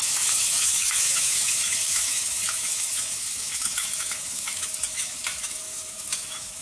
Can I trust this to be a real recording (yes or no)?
no